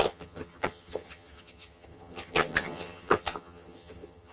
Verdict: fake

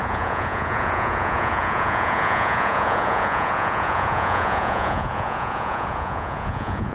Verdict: fake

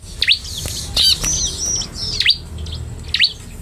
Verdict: real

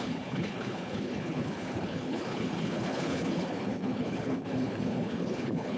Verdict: fake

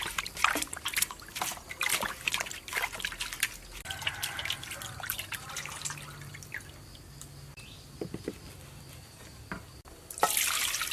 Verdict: real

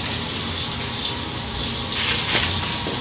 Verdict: real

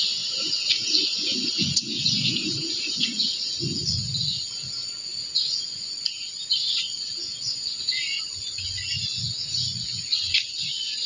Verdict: fake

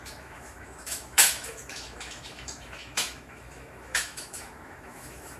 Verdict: fake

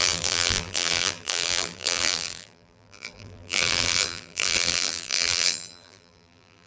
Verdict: fake